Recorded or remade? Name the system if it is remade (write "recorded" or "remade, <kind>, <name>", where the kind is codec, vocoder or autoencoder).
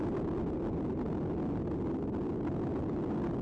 recorded